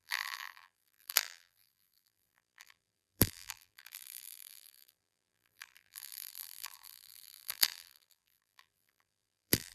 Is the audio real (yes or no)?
no